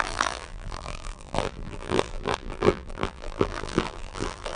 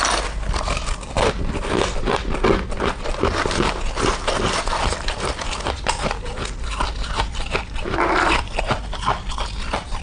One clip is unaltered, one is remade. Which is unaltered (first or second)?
second